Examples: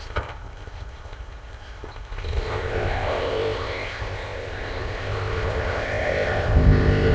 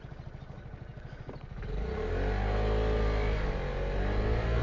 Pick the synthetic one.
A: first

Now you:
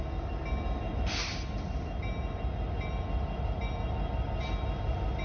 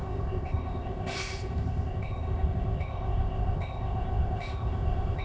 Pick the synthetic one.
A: second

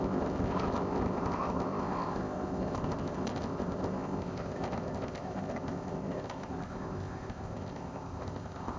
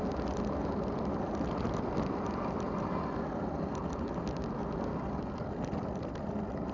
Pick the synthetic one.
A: first